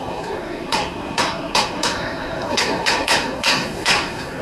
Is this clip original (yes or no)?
no